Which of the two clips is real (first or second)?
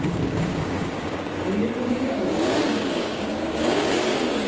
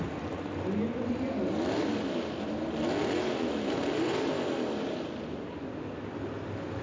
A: second